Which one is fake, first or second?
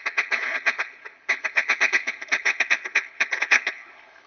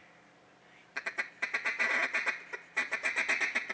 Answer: first